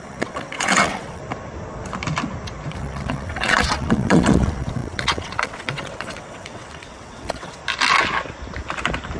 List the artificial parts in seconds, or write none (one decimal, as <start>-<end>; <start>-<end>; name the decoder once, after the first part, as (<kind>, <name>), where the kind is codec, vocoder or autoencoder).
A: 0.0-1.2 (vocoder, WaveNeXt); 2.7-7.6